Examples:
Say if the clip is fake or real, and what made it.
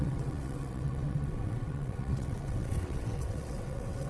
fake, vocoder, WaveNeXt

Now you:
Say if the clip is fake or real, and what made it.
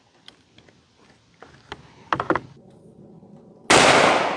real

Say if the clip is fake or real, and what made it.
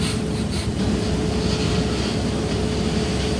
real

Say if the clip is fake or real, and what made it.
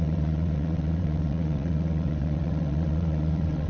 fake, vocoder, WaveNeXt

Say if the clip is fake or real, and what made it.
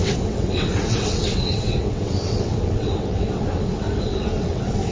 fake, vocoder, WaveNeXt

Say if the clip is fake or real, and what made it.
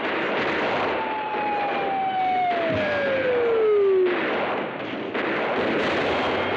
real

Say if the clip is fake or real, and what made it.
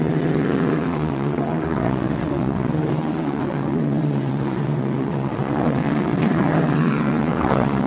fake, vocoder, WaveNeXt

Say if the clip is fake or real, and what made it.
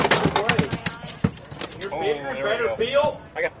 real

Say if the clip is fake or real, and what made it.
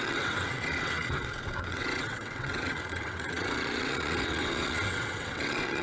fake, vocoder, WaveNeXt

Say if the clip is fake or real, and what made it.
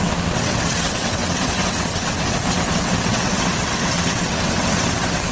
fake, vocoder, WaveNeXt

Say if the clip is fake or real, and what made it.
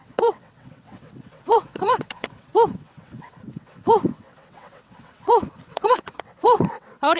fake, vocoder, WaveNeXt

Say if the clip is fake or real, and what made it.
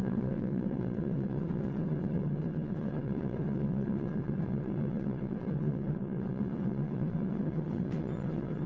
fake, vocoder, WaveNeXt